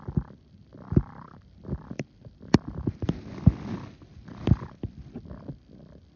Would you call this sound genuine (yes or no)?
yes